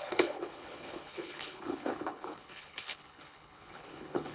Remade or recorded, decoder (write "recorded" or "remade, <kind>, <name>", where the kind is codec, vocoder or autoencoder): remade, codec, HILCodec